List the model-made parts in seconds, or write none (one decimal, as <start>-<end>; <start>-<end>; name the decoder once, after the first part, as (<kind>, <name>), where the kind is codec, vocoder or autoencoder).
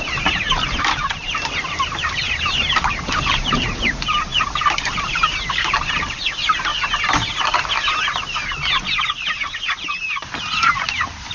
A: 0.0-6.7 (vocoder, BigVGAN v2); 9.3-11.3